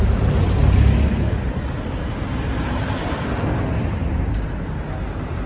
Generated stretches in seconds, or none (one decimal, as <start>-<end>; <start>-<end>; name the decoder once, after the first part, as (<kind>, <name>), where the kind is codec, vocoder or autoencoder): none